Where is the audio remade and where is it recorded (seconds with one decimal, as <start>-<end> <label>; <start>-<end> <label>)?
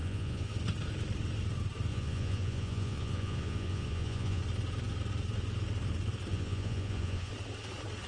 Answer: 0.0-0.5 remade; 0.5-1.9 recorded; 1.9-4.4 remade; 4.4-6.3 recorded; 6.3-7.3 remade; 7.3-8.1 recorded